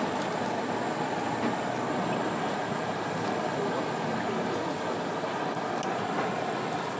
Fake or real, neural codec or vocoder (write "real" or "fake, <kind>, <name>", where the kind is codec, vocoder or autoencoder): real